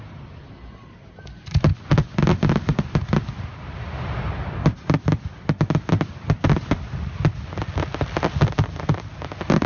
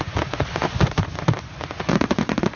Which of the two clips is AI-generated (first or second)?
second